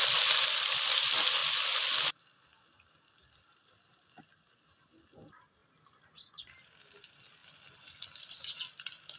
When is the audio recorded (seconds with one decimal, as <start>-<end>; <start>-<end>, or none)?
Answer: 0.0-9.2